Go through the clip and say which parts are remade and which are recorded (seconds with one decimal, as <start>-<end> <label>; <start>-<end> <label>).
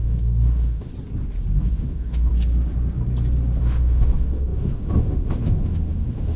0.0-0.9 remade; 0.9-1.6 recorded; 1.6-2.3 remade; 2.3-3.6 recorded; 3.6-6.4 remade